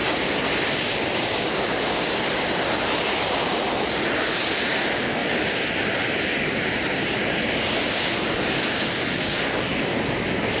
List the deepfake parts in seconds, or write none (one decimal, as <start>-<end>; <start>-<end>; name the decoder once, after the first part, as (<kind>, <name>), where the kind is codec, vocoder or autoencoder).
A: 0.0-2.7 (vocoder, BigVGAN v2); 5.2-8.0